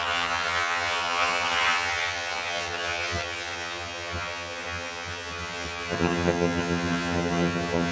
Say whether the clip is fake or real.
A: fake